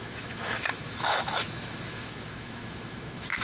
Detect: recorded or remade remade